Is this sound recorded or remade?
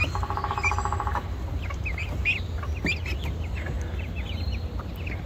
recorded